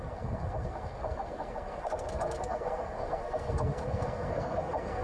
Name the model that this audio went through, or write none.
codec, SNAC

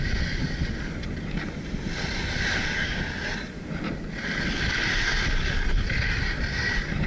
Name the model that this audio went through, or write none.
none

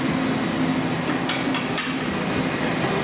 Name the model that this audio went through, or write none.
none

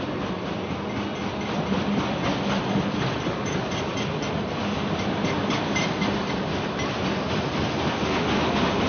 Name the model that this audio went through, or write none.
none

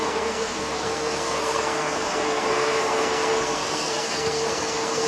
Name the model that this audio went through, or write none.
codec, SNAC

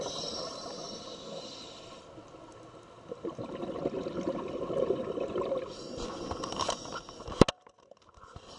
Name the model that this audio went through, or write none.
none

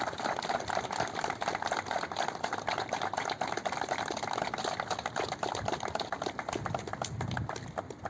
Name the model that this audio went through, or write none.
none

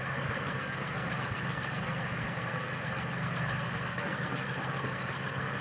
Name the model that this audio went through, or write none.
codec, SNAC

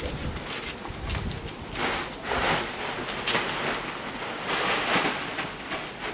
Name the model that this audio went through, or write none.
none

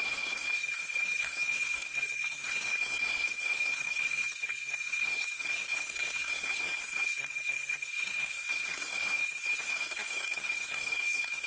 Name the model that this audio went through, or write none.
codec, SNAC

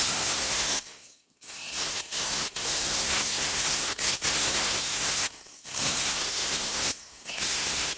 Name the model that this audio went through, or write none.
codec, SNAC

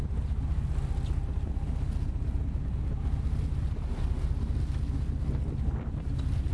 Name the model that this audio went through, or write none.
none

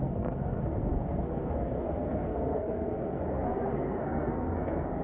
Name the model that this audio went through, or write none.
codec, SNAC